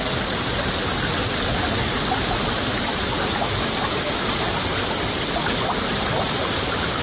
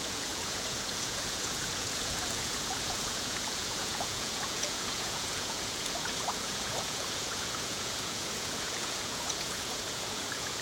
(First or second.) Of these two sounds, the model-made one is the second